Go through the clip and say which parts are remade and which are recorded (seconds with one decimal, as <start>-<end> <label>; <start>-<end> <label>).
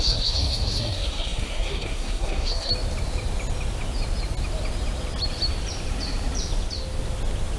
0.0-2.7 remade; 2.7-7.6 recorded